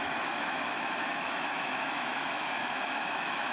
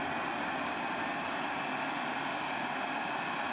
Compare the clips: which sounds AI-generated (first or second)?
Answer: first